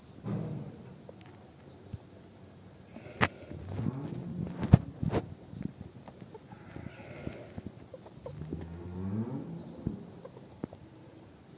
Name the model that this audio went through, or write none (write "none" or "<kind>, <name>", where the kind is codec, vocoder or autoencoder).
none